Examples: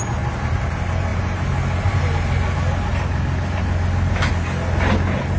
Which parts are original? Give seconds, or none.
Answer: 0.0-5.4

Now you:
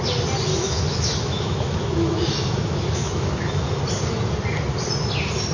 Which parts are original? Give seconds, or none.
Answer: 0.0-0.5; 3.8-5.5

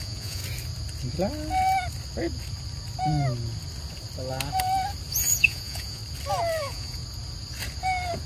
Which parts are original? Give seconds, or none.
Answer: 0.4-5.1; 6.0-6.6; 7.0-8.3

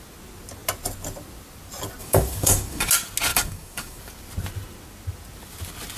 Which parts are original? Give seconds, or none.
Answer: 0.0-2.0; 2.9-3.3; 4.0-6.0

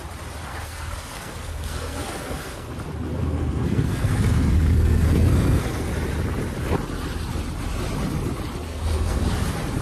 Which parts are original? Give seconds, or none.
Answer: 0.0-0.5; 2.7-3.2; 5.9-8.7; 9.2-9.8

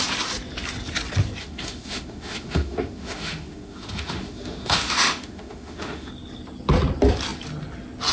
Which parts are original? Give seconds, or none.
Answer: 0.0-1.4; 6.1-8.1

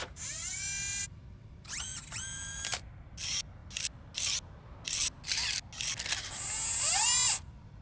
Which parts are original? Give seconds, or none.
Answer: 0.6-1.0; 2.8-7.8